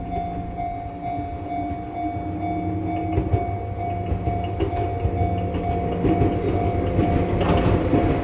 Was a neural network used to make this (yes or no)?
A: no